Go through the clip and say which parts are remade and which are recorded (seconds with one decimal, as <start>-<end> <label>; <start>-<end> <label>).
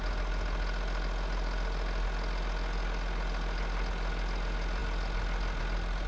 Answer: 0.0-6.1 recorded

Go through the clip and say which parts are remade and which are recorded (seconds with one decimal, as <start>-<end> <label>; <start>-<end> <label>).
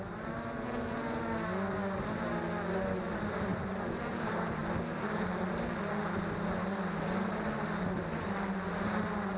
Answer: 0.0-9.4 recorded